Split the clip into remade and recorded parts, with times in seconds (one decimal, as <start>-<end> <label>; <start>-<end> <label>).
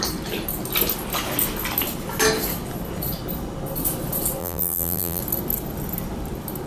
0.0-4.4 recorded; 4.4-5.2 remade; 5.2-6.7 recorded